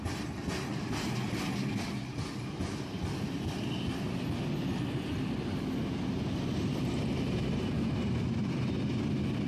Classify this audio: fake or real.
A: real